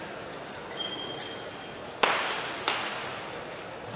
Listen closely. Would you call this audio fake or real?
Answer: real